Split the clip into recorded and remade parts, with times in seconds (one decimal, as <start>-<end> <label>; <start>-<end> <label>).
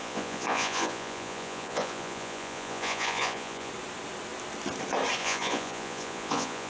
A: 0.0-3.7 remade; 3.7-5.2 recorded; 5.2-6.7 remade